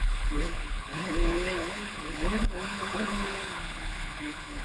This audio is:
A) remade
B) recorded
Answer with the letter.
A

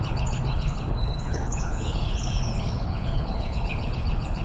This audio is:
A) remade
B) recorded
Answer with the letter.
A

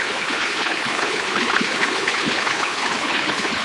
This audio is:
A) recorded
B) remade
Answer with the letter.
B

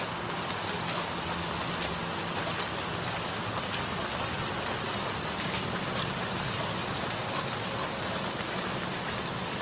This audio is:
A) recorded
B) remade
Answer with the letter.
A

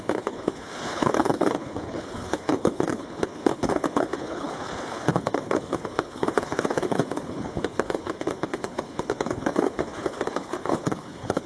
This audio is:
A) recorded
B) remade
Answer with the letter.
B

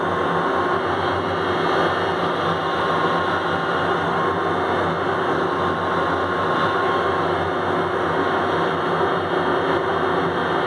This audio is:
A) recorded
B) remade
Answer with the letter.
A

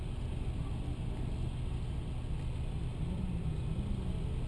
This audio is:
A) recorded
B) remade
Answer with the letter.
A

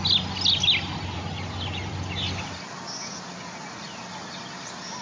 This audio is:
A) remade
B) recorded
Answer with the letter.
B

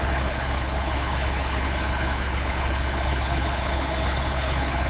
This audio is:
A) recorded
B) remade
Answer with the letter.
B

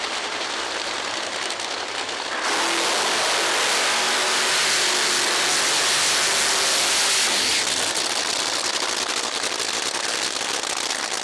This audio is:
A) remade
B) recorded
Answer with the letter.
B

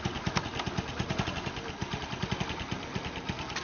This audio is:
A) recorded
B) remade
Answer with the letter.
A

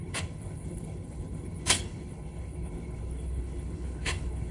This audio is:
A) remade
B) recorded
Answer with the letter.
A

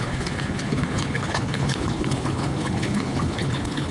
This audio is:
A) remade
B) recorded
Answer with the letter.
A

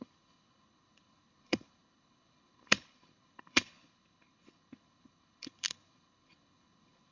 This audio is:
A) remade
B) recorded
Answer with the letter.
A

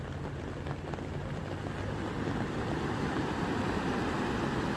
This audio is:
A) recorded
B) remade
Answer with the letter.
A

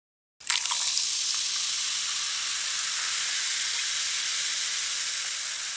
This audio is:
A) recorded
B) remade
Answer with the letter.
A